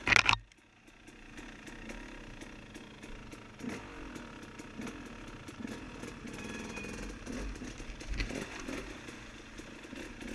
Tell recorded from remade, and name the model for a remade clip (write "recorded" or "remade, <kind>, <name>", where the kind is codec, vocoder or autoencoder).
recorded